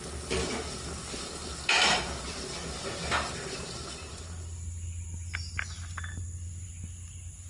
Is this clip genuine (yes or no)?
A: yes